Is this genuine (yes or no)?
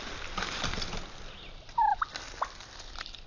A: yes